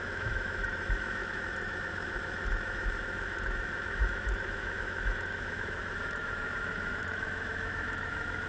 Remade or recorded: remade